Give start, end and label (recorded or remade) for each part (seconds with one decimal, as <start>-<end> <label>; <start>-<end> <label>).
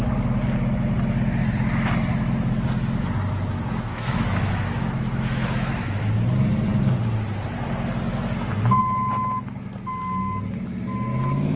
0.0-3.9 recorded; 3.9-6.1 remade; 6.1-11.6 recorded